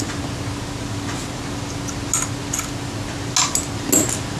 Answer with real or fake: real